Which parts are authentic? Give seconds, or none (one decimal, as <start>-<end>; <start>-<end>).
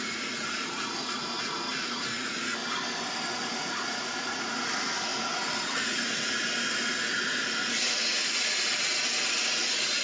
2.6-3.3